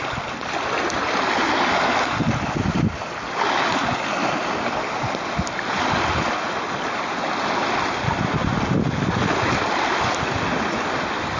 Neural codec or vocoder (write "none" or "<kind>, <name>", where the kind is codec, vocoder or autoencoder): none